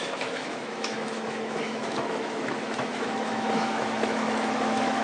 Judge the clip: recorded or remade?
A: remade